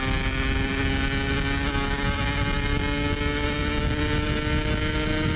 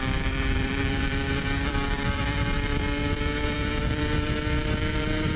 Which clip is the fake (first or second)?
second